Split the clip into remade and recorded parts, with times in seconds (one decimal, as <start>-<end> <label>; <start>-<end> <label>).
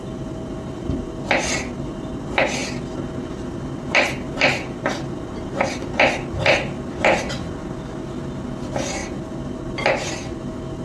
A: 0.0-10.8 recorded